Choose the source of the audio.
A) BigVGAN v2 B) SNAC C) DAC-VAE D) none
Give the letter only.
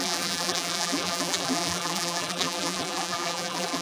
A